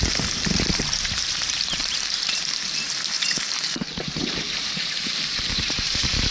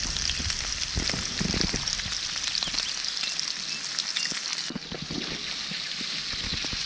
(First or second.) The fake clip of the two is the first